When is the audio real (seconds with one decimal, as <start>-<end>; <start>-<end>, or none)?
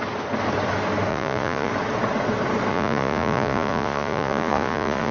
0.0-1.1; 1.7-2.7